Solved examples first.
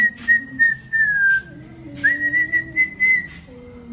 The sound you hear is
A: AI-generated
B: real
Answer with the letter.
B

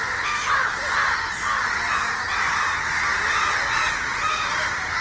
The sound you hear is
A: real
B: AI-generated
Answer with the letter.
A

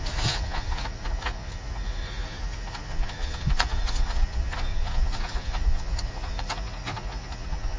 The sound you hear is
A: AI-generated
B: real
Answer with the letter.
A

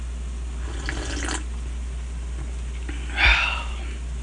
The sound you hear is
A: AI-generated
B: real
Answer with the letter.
B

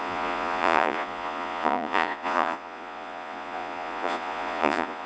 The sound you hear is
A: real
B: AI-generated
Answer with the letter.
B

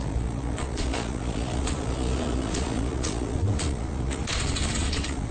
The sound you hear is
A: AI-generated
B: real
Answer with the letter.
A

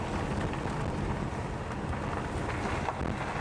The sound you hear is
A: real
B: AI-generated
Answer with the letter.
A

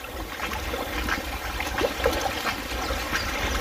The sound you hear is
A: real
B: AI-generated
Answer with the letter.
A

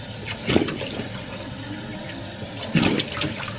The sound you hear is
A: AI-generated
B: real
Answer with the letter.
B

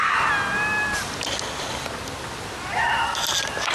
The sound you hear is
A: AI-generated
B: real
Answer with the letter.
B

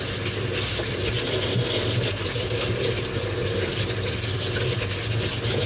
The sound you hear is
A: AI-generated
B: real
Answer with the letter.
B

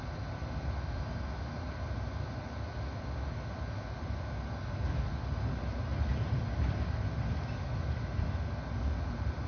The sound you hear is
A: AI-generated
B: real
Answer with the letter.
B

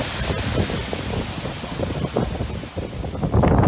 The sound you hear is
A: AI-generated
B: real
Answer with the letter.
B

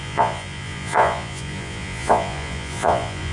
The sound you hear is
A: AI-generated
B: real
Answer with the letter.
A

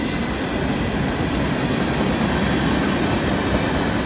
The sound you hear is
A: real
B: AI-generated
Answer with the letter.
A